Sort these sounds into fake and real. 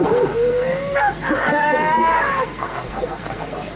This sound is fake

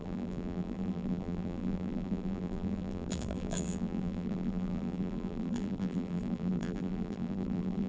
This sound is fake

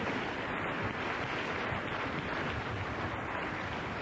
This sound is real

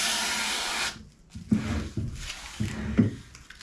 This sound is real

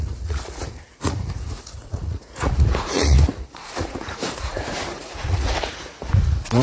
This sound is fake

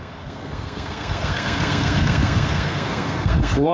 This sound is fake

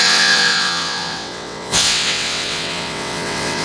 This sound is fake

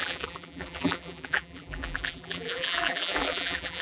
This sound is fake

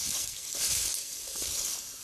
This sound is fake